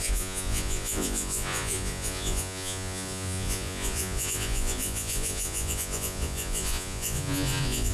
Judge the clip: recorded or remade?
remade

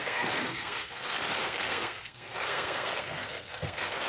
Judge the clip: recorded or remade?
remade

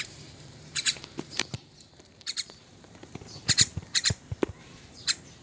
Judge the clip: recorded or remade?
remade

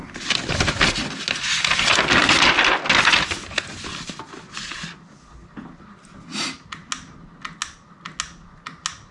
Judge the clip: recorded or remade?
recorded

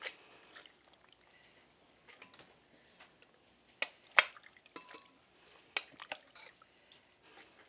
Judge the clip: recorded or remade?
recorded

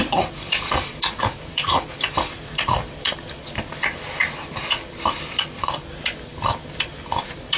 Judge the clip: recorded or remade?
remade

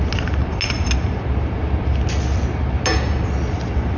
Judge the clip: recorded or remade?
recorded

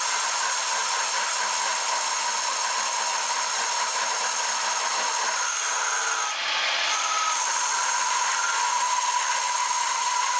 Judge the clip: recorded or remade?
recorded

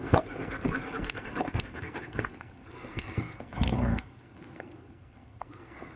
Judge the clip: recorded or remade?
remade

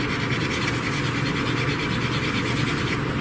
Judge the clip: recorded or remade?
recorded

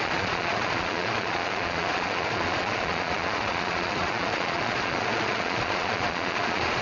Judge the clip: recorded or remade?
remade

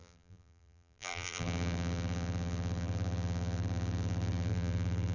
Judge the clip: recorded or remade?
remade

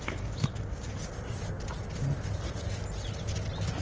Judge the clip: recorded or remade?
recorded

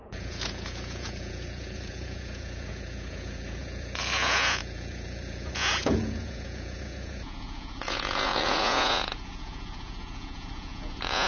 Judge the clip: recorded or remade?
remade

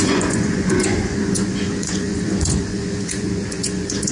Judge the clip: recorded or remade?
remade